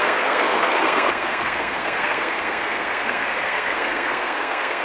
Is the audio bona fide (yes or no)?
no